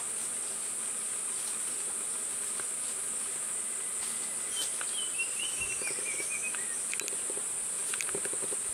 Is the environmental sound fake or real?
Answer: real